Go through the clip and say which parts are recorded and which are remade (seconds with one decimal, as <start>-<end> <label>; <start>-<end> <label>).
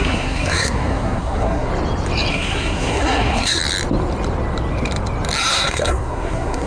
0.0-1.7 remade; 1.7-2.3 recorded; 2.3-3.6 remade; 3.6-5.5 recorded; 5.5-6.7 remade